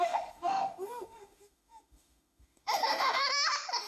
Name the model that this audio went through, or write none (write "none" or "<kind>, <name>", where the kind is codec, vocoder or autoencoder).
autoencoder, DAC-VAE